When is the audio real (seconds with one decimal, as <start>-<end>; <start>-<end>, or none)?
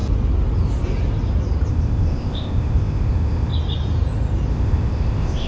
0.0-1.7; 3.5-4.5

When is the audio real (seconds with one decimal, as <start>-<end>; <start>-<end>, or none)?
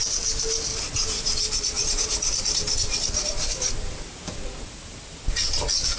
0.0-0.7; 4.1-6.0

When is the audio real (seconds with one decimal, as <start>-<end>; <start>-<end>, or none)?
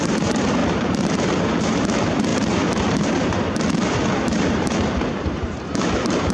none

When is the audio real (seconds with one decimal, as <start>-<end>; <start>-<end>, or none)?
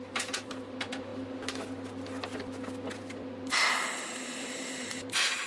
1.1-4.4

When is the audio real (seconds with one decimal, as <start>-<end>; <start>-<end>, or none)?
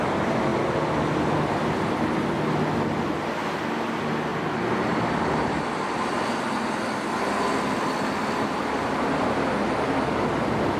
0.0-10.8